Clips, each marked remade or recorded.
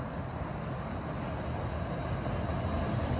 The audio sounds recorded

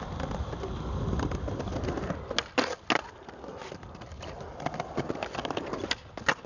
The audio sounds recorded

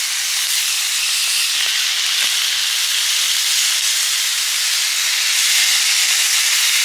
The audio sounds recorded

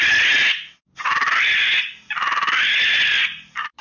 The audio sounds recorded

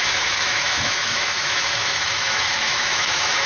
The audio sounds remade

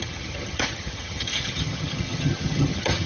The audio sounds remade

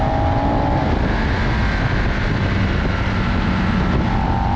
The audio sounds recorded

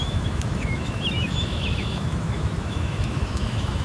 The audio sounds remade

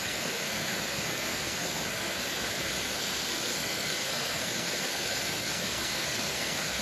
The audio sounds remade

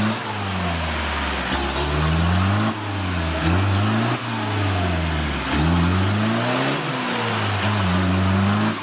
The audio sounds recorded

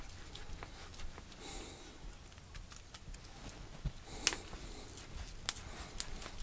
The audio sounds recorded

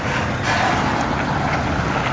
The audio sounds recorded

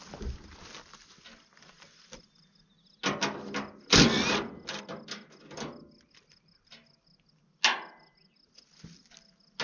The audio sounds recorded